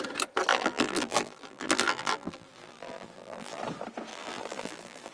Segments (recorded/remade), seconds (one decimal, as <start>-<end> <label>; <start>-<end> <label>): 0.0-0.5 recorded; 0.5-3.6 remade; 3.6-4.1 recorded; 4.1-5.1 remade